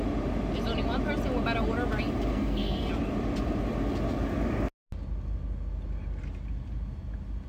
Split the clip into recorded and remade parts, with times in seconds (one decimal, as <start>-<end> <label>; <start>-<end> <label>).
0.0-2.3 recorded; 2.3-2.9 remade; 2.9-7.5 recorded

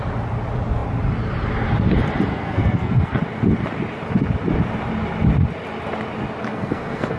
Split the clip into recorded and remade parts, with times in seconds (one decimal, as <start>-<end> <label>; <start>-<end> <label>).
0.0-2.3 recorded; 2.3-3.2 remade; 3.2-6.5 recorded; 6.5-7.2 remade

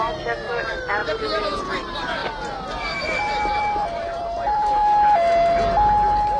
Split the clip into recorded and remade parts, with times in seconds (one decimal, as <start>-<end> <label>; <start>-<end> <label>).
0.0-1.0 remade; 1.0-1.6 recorded; 1.6-2.2 remade; 2.2-3.0 recorded; 3.0-4.8 remade; 4.8-6.4 recorded

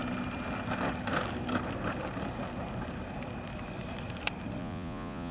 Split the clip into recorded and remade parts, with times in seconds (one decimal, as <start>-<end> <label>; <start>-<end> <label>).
0.0-4.6 recorded; 4.6-5.3 remade

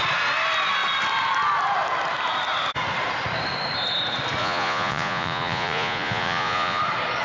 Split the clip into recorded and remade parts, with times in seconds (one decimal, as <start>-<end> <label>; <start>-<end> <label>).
0.0-4.4 recorded; 4.4-6.8 remade; 6.8-7.2 recorded

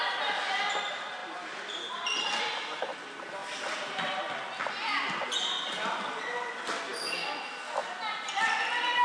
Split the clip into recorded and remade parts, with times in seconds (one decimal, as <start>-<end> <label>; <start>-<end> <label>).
0.0-9.0 recorded

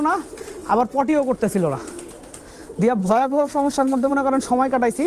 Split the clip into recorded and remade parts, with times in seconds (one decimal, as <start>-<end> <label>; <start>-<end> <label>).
0.0-3.0 recorded; 3.0-4.1 remade; 4.1-5.1 recorded

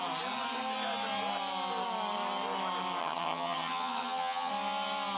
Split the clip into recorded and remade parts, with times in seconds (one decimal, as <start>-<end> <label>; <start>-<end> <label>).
0.0-3.0 recorded; 3.0-4.5 remade; 4.5-5.2 recorded